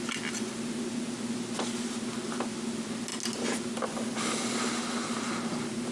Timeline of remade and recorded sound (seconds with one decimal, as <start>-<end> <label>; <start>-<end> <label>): 0.0-5.9 recorded

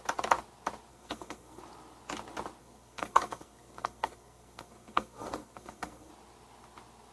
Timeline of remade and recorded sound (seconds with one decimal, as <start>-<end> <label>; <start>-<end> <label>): 0.0-0.9 recorded; 0.9-1.6 remade; 1.6-2.6 recorded; 2.6-6.1 remade; 6.1-7.1 recorded

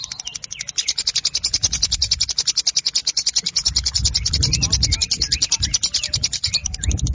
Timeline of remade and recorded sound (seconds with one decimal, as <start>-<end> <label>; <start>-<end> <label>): 0.0-7.1 recorded

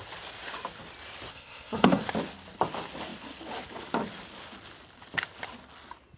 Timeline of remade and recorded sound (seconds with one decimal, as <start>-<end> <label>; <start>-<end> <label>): 0.0-1.3 recorded; 1.3-2.0 remade; 2.0-6.2 recorded